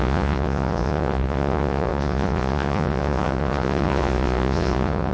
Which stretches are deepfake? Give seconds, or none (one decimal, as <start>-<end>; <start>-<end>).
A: 0.0-5.1